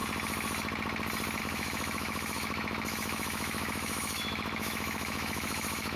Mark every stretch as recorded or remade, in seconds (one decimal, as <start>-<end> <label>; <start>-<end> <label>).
0.0-1.4 recorded; 1.4-6.0 remade